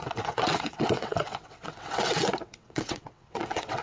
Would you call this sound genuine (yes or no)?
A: no